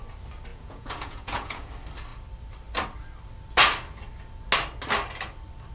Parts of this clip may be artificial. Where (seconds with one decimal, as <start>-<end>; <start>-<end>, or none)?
0.5-1.7